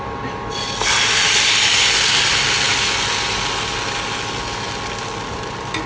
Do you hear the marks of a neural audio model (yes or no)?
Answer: no